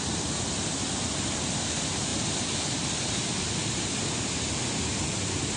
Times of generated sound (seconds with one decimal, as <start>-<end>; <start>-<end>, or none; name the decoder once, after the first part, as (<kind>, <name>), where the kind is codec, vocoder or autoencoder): none